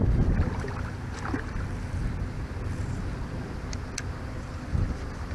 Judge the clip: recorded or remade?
recorded